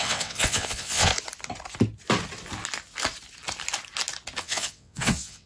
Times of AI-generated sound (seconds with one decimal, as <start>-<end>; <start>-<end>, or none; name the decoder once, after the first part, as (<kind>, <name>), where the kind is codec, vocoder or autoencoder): 0.0-1.1 (vocoder, WaveNeXt); 4.4-5.5